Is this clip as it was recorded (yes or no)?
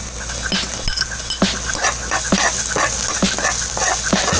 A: yes